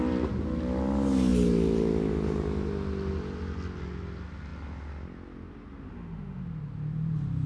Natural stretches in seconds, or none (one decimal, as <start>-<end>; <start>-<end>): 0.0-5.9; 6.4-7.5